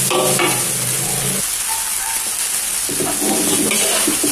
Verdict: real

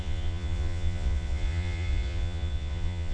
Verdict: fake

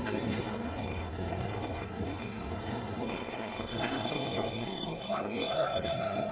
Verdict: fake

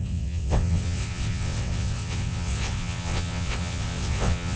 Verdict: fake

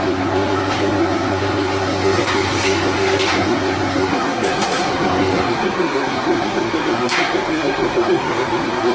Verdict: fake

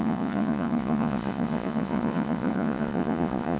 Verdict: fake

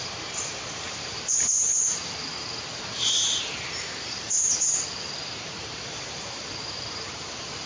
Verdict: fake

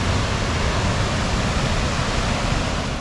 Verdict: real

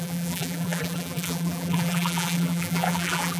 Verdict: fake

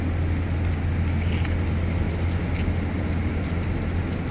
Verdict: real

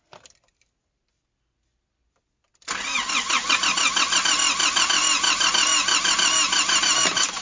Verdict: real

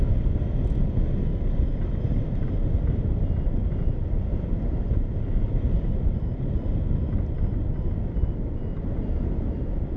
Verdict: real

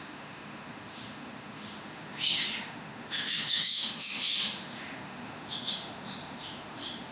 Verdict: fake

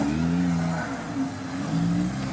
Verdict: real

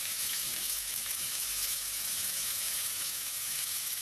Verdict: fake